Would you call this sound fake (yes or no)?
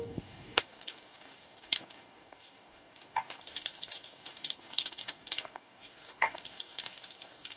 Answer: yes